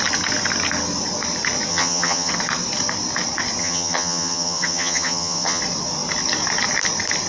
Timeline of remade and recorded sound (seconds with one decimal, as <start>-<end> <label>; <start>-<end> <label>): 0.0-1.7 recorded; 1.7-2.3 remade; 2.3-3.6 recorded; 3.6-5.6 remade; 5.6-7.3 recorded